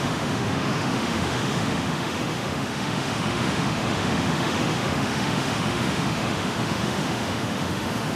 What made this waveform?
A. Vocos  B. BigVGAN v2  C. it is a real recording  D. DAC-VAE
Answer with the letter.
D